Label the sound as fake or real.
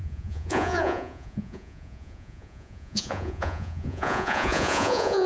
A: fake